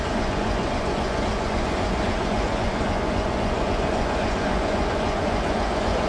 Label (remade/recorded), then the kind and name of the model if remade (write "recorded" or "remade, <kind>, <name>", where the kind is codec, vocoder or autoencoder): remade, vocoder, Vocos